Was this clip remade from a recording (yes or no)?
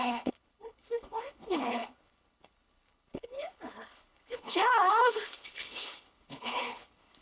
yes